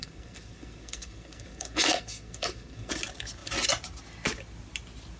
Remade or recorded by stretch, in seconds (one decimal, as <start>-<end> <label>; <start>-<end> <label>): 0.0-2.9 remade; 2.9-5.2 recorded